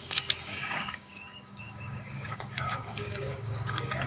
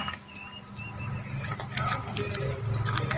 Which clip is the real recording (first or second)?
second